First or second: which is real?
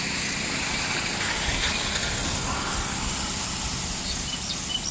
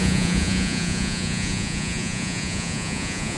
first